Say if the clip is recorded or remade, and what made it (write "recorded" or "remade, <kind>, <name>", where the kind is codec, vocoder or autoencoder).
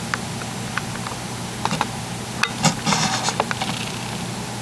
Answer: recorded